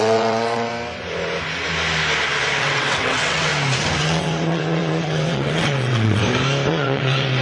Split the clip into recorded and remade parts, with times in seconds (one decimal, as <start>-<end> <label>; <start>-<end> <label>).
0.0-0.7 remade; 0.7-2.6 recorded; 2.6-3.5 remade; 3.5-4.0 recorded; 4.0-6.2 remade; 6.2-6.7 recorded; 6.7-7.4 remade